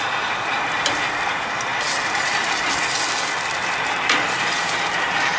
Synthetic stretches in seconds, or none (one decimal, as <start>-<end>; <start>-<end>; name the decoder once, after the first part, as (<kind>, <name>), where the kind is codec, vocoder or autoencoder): 1.7-2.9 (vocoder, BigVGAN v2); 3.6-5.4